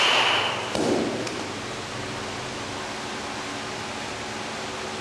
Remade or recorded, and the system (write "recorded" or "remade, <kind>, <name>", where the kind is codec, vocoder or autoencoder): recorded